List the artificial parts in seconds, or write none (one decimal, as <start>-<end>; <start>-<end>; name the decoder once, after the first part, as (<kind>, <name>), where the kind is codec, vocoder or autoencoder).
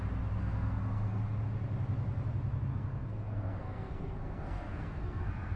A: 0.4-1.2 (codec, SNAC); 2.7-5.6